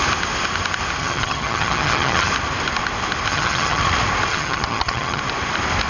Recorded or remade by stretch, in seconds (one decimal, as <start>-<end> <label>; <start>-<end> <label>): 0.0-1.0 recorded; 1.0-2.3 remade; 2.3-3.3 recorded; 3.3-3.8 remade; 3.8-4.3 recorded; 4.3-5.2 remade; 5.2-5.9 recorded